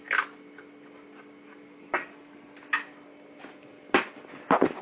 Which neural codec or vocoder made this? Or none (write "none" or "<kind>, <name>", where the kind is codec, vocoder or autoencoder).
none